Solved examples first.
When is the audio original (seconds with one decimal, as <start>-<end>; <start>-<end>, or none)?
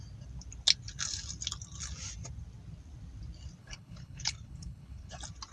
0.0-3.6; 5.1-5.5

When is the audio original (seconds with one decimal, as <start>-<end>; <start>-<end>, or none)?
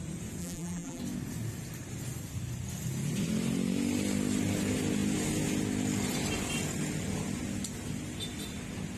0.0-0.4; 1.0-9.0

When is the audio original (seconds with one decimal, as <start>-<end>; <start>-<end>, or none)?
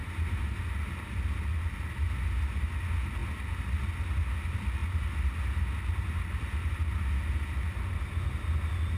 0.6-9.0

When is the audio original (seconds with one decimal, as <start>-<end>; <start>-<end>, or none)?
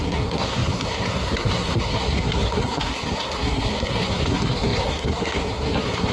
none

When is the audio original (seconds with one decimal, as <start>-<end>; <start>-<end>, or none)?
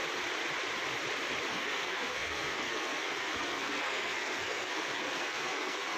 0.0-1.5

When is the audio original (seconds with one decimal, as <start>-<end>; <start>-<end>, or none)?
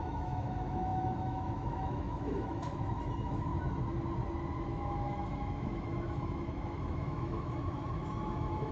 3.5-4.6